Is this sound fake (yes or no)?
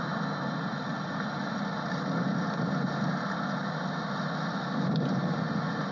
no